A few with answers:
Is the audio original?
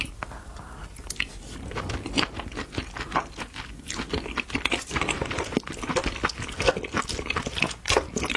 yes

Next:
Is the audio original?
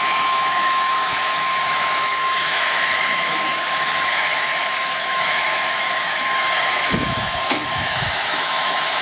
no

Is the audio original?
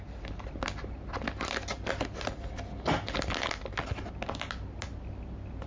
yes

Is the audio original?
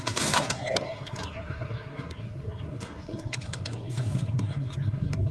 no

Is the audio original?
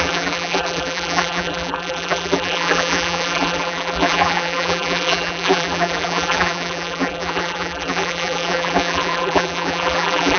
no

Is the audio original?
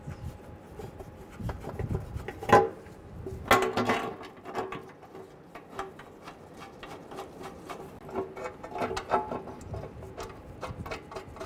yes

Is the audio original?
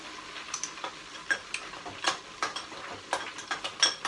yes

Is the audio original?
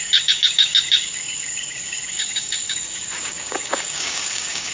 no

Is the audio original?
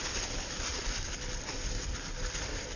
yes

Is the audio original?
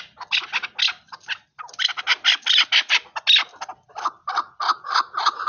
yes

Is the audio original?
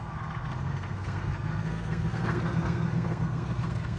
no